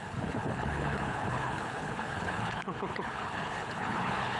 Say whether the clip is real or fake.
fake